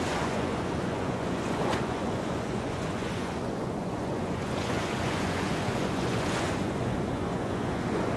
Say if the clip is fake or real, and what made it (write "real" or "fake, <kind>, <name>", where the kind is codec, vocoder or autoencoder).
fake, vocoder, Vocos